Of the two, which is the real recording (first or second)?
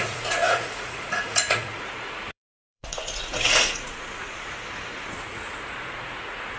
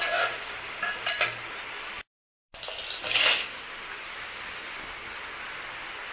second